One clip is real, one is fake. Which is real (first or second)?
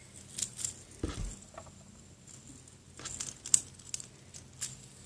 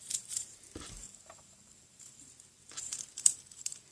first